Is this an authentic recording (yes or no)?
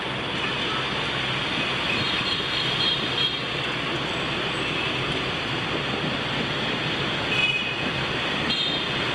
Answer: yes